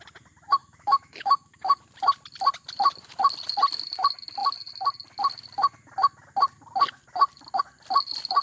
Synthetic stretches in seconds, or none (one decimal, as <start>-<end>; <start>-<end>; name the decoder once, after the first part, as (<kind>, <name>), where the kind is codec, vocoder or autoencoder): 0.6-1.8 (autoencoder, DAC-VAE)